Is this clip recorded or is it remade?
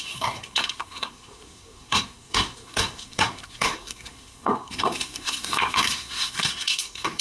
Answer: remade